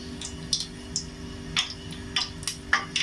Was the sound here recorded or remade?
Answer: recorded